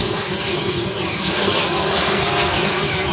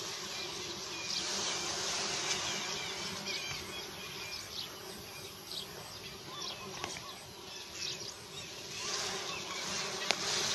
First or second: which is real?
second